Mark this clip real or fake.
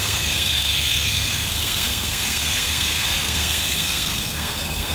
fake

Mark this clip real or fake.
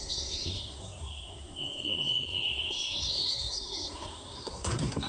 fake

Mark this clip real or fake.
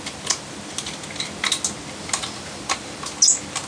real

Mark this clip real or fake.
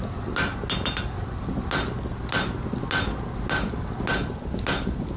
real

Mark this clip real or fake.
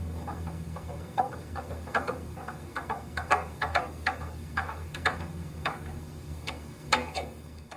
fake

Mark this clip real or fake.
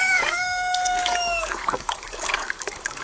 fake